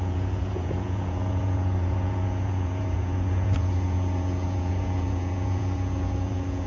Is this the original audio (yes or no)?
no